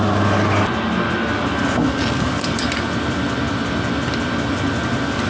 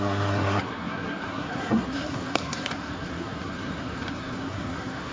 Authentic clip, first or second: first